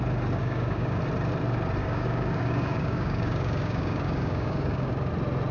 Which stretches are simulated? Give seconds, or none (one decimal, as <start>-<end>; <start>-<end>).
0.4-1.0; 1.8-5.1